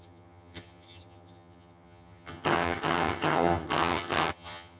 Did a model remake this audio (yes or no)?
yes